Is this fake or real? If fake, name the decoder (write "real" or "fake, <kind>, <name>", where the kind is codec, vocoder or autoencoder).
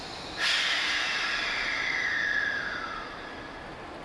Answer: real